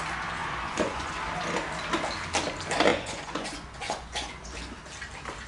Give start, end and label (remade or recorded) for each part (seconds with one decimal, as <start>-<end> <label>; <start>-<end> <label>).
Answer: 0.0-0.4 recorded; 0.4-1.1 remade; 1.1-2.9 recorded; 2.9-4.5 remade; 4.5-5.5 recorded